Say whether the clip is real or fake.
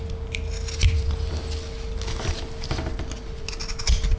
real